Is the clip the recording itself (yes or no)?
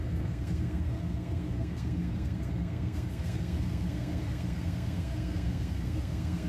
no